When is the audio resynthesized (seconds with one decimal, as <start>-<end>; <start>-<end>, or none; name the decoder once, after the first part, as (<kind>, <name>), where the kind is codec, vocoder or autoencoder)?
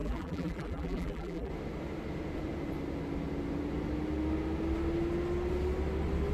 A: 0.0-1.5 (vocoder, BigVGAN v2)